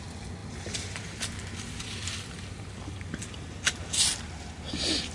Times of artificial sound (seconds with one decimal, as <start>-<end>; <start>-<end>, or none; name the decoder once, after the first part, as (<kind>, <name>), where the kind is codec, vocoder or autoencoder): 0.4-3.3 (vocoder, BigVGAN v2)